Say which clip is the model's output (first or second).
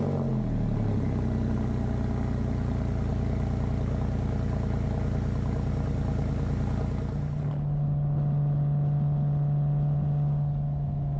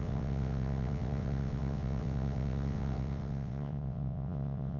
second